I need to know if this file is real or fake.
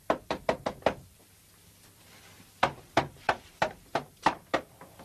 fake